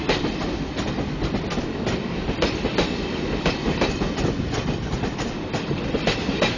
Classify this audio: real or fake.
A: real